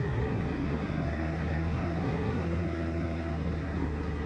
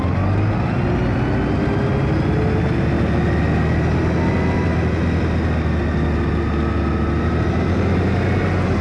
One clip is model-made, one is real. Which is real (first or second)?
second